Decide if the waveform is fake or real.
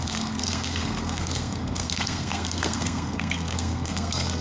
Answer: fake